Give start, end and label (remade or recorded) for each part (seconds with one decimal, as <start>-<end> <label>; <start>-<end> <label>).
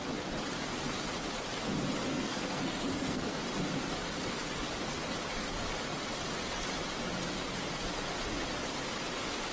0.0-2.1 recorded; 2.1-3.4 remade; 3.4-9.5 recorded